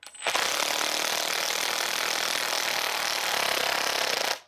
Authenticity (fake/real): real